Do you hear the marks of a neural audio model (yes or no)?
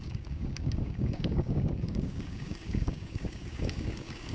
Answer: yes